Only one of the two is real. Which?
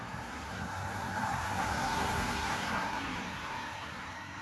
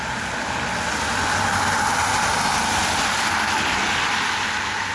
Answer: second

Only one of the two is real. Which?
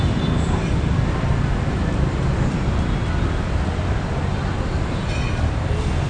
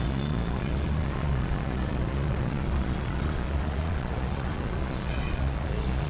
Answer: first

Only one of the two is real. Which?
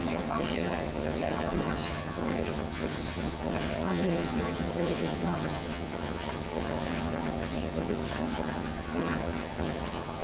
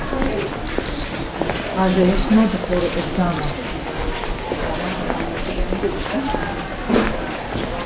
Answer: second